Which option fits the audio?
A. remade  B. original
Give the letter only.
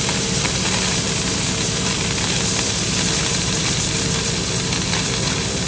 A